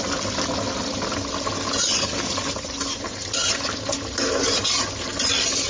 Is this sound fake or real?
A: real